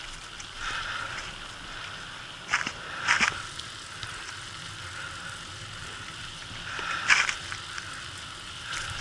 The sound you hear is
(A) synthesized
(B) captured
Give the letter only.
A